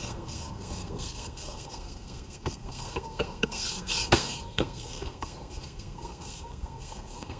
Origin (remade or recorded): remade